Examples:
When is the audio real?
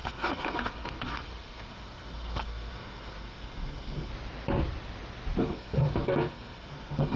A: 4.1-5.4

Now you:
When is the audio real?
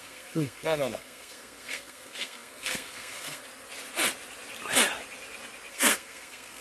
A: 3.4-5.7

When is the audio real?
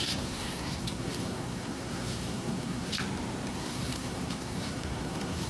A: 2.9-3.5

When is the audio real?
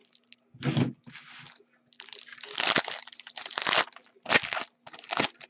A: 0.0-5.5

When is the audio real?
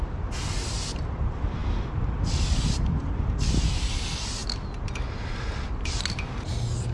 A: 0.0-6.9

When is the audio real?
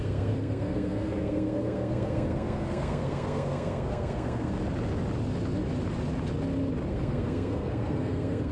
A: 4.5-6.9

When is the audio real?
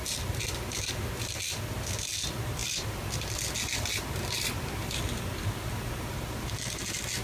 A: 0.0-7.2